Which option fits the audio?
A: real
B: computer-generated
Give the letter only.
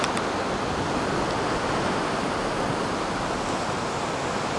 A